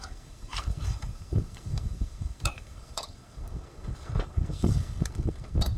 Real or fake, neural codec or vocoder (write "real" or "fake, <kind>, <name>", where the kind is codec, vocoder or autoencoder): fake, codec, SNAC